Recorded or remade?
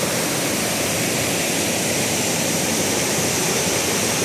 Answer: recorded